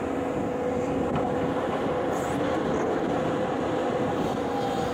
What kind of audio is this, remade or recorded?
recorded